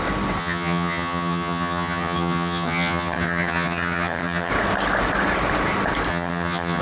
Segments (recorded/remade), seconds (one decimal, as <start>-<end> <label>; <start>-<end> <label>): 0.0-0.4 recorded; 0.4-4.5 remade; 4.5-6.1 recorded; 6.1-6.8 remade